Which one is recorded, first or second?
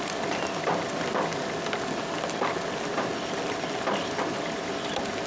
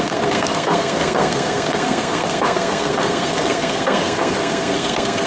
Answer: first